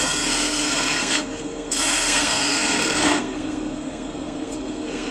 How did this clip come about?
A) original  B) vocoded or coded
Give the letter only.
B